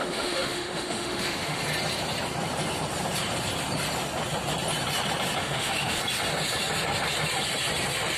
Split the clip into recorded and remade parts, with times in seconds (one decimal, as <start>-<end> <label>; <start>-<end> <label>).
0.0-1.6 remade; 1.6-5.4 recorded; 5.4-6.0 remade; 6.0-8.2 recorded